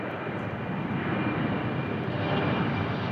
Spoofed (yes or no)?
yes